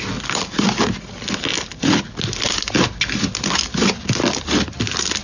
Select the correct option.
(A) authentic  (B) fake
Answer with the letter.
A